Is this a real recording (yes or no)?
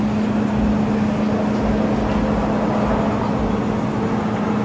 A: yes